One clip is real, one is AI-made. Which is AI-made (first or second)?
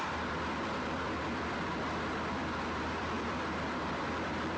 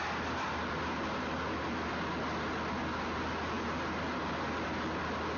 first